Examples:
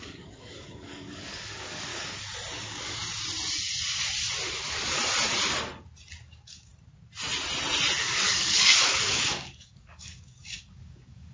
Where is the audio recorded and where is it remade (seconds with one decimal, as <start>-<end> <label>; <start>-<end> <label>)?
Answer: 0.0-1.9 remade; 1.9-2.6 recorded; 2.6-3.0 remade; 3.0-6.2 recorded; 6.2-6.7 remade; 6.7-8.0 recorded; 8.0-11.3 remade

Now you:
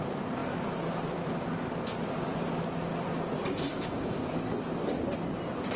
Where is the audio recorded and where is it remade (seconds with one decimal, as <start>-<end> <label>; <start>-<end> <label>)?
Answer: 0.0-3.7 recorded; 3.7-4.4 remade; 4.4-5.8 recorded

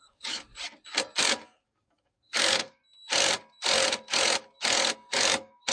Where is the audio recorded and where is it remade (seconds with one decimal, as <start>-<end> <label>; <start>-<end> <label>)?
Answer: 0.0-0.5 remade; 0.5-1.2 recorded; 1.2-2.8 remade; 2.8-5.1 recorded; 5.1-5.7 remade